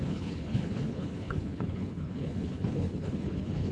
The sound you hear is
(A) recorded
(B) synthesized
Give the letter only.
B